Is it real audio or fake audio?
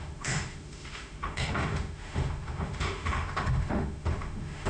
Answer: fake